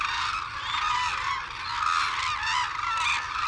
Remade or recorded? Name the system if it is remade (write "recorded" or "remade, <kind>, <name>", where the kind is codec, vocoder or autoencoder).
recorded